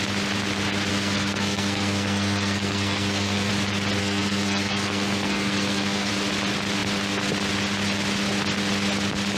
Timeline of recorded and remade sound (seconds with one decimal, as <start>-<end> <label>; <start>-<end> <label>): 0.0-0.9 recorded; 0.9-3.5 remade; 3.5-4.0 recorded; 4.0-6.1 remade; 6.1-9.4 recorded